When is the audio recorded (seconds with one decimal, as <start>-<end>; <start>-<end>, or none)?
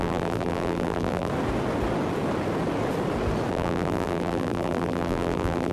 1.3-3.5